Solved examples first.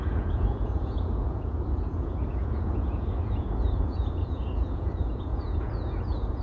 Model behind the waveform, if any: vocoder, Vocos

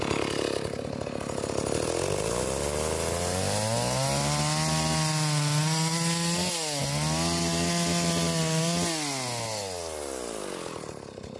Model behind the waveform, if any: none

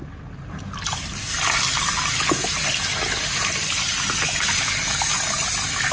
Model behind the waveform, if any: none